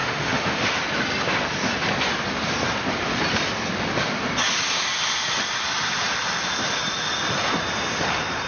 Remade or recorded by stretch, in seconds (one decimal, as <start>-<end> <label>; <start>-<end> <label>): 0.0-0.8 remade; 0.8-8.5 recorded